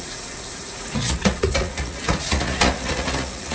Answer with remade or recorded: remade